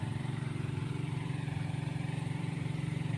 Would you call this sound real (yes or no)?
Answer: no